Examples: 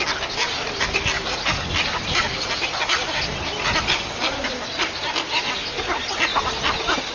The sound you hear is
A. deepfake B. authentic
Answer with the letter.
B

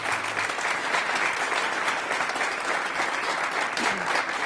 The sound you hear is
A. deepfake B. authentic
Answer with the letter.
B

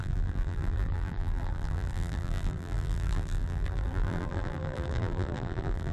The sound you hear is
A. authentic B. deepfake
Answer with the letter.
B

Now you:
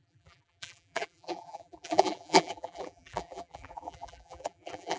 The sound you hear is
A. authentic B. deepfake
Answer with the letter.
B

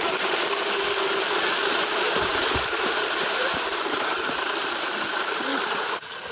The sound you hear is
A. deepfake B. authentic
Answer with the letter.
A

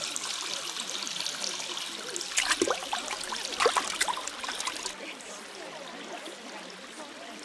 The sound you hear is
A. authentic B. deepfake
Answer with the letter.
A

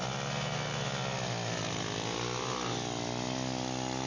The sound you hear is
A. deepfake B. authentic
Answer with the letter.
B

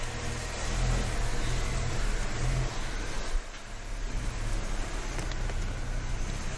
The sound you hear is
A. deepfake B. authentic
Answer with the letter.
B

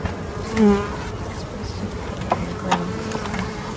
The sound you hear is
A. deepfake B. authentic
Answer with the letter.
B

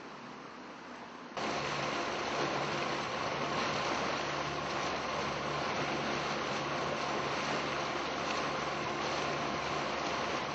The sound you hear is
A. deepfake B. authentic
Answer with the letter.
B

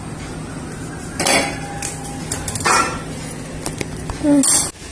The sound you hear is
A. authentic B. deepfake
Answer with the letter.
A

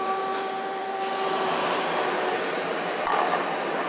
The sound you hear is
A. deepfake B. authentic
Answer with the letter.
A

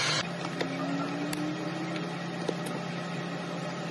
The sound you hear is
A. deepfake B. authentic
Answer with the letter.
B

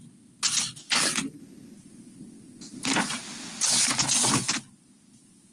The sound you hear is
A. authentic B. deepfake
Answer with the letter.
A